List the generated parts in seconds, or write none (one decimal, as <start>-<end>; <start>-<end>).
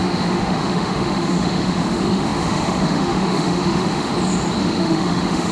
0.0-4.1; 4.6-5.5